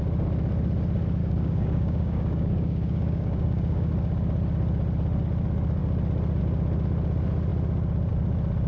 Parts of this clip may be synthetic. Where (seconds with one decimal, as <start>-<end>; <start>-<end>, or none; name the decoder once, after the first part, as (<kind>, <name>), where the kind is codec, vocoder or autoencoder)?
1.2-3.9 (codec, DAC)